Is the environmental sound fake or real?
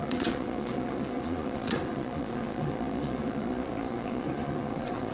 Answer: fake